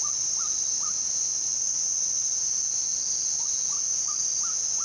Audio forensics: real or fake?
real